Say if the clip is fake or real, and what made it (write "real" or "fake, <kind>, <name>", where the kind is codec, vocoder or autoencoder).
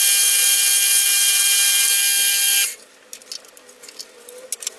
real